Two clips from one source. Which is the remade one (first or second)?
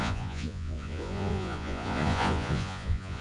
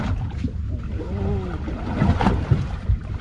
first